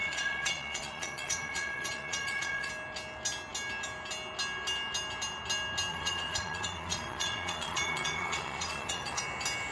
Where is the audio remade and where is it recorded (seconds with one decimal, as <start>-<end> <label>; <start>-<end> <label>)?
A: 0.0-2.7 remade; 2.7-5.9 recorded; 5.9-9.2 remade; 9.2-9.7 recorded